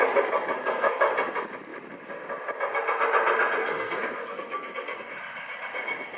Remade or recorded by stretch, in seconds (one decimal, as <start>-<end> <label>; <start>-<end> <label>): 0.0-0.6 recorded; 0.6-1.1 remade; 1.1-3.6 recorded; 3.6-5.1 remade; 5.1-6.2 recorded